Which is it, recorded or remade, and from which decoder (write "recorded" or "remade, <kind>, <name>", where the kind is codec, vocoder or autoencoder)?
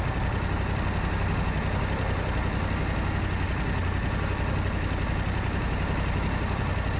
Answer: recorded